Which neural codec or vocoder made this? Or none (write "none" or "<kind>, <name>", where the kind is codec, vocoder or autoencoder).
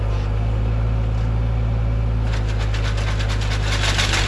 none